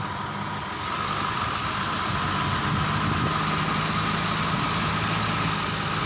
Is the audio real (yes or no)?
yes